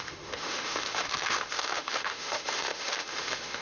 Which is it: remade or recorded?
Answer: remade